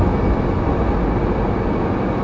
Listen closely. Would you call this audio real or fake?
real